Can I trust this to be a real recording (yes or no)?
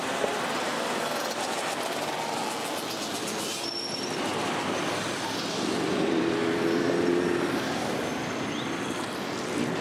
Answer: yes